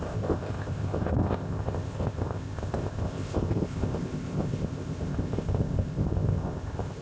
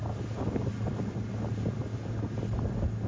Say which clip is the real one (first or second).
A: second